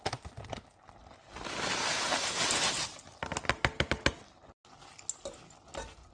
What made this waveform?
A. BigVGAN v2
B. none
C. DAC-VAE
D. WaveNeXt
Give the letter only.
B